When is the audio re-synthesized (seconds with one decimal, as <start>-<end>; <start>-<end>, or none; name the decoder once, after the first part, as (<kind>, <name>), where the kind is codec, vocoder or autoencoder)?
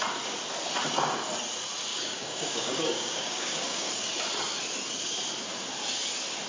1.9-3.9 (codec, DAC)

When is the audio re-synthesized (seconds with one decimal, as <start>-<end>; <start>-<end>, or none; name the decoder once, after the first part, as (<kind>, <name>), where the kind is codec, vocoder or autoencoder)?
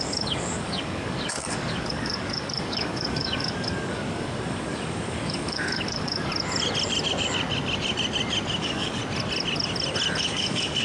0.0-6.3 (codec, DAC); 8.6-9.0; 10.2-10.8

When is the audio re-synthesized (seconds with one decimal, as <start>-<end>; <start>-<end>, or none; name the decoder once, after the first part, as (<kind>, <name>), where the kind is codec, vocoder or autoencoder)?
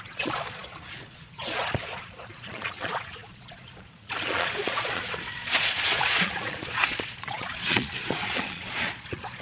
0.0-9.4 (vocoder, Vocos)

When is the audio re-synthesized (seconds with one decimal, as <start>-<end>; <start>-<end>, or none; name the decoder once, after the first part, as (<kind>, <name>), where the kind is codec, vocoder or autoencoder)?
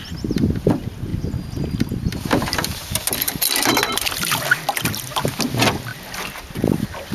none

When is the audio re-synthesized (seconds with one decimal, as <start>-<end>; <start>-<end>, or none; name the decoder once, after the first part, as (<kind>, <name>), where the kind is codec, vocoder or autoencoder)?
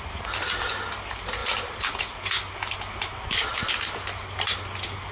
1.4-2.0 (vocoder, BigVGAN v2)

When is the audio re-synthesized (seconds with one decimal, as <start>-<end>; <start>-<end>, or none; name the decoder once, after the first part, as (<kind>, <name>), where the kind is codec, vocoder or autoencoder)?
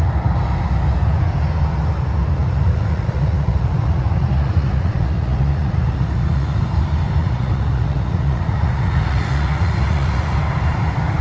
2.4-6.6 (vocoder, Vocos); 7.2-10.3